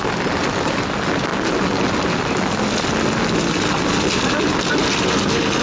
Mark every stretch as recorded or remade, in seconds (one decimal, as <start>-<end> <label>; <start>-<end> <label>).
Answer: 0.0-5.6 recorded